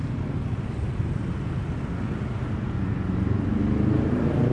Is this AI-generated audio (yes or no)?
no